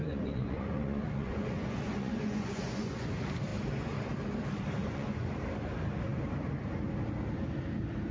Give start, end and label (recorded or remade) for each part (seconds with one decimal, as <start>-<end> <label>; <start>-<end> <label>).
0.0-3.1 remade; 3.1-4.8 recorded; 4.8-5.3 remade; 5.3-8.1 recorded